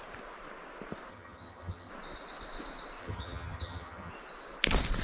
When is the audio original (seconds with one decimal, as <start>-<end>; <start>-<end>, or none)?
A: 0.0-1.1; 1.9-3.0; 4.1-5.0